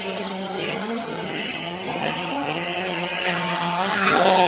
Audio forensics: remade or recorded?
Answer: remade